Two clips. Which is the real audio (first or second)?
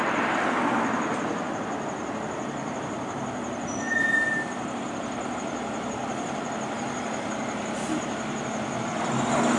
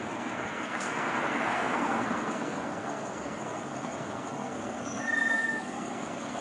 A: first